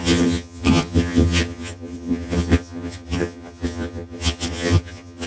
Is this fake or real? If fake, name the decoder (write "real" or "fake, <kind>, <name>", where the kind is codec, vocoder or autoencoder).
fake, vocoder, HiFi-GAN